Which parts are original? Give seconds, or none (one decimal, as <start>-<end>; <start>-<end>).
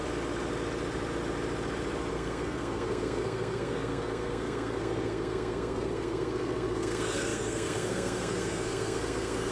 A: 0.0-2.1